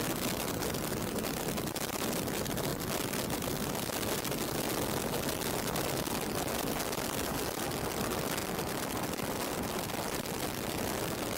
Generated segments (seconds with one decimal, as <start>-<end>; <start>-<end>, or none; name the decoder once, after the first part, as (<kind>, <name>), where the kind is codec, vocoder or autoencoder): 7.3-8.0 (vocoder, BigVGAN v2); 8.4-11.4